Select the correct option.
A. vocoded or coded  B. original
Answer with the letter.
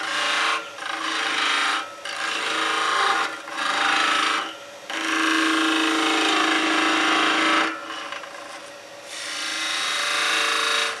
B